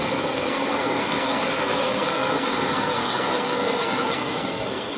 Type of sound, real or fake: fake